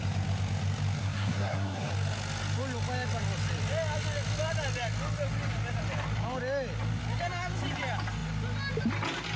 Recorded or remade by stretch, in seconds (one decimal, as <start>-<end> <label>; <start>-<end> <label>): 0.0-1.0 recorded; 1.0-1.9 remade; 1.9-9.4 recorded